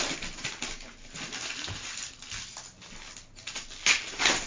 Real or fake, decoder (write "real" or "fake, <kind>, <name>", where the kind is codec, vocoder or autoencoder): real